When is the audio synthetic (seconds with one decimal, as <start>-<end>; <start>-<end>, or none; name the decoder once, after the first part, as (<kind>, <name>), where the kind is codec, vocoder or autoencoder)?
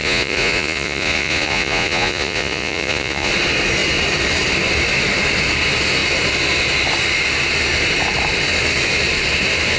0.0-3.3 (vocoder, Vocos)